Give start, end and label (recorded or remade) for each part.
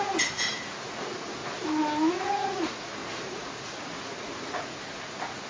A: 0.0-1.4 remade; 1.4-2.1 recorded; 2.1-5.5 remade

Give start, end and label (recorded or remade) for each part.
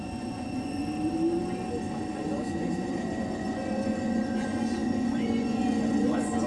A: 0.0-0.8 remade; 0.8-2.2 recorded; 2.2-6.5 remade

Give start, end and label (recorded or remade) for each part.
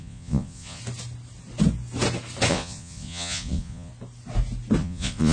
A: 0.0-0.8 remade; 0.8-2.5 recorded; 2.5-3.9 remade; 3.9-4.8 recorded; 4.8-5.3 remade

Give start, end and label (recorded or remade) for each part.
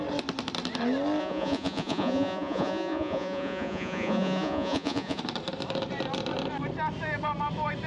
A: 0.0-1.2 recorded; 1.2-5.2 remade; 5.2-7.9 recorded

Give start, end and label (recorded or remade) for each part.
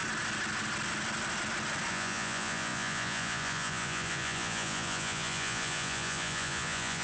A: 0.0-1.9 recorded; 1.9-7.0 remade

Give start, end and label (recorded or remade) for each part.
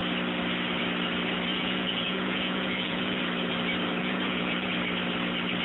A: 0.0-1.5 recorded; 1.5-3.2 remade; 3.2-4.0 recorded; 4.0-4.7 remade; 4.7-5.6 recorded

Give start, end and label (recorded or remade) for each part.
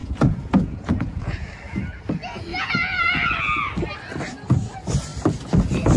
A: 0.0-1.5 remade; 1.5-2.5 recorded; 2.5-3.3 remade; 3.3-6.0 recorded